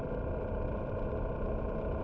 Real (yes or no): yes